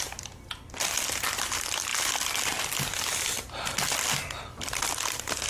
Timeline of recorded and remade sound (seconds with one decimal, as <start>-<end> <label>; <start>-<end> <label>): 0.0-5.5 recorded